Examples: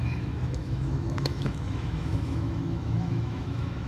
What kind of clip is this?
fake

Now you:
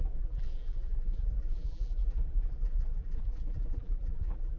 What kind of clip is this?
fake